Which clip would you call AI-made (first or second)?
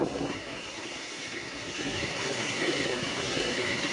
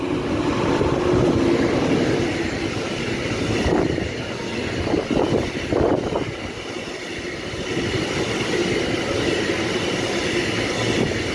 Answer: first